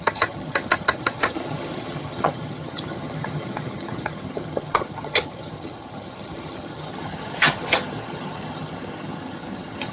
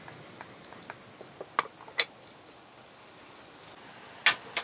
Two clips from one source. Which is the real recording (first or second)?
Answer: second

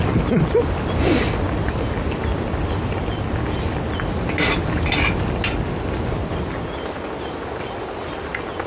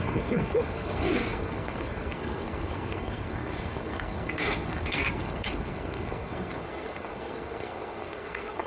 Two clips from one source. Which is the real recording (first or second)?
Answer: first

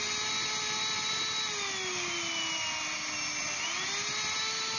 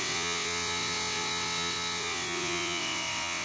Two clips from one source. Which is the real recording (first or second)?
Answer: first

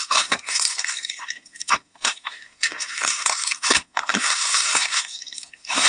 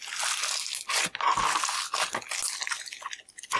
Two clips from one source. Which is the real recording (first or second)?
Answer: second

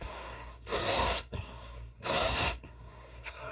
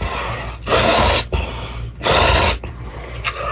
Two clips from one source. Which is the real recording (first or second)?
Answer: second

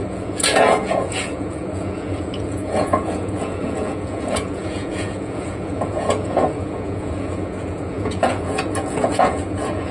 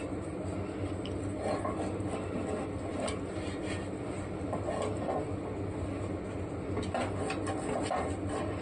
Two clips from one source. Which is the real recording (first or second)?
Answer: second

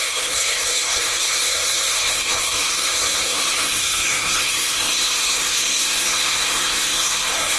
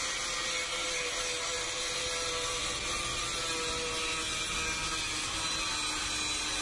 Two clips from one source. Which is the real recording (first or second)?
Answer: second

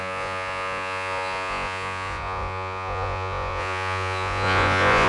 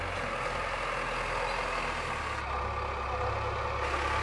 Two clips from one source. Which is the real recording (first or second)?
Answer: second